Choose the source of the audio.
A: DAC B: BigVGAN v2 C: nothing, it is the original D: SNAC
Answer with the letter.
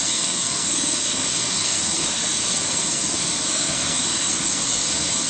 D